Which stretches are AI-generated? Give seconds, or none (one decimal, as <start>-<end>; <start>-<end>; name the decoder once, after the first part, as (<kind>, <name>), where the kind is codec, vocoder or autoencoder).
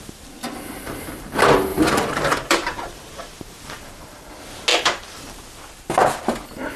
1.7-4.3 (vocoder, BigVGAN v2); 4.7-5.4